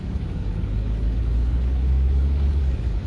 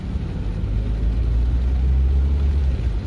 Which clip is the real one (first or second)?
second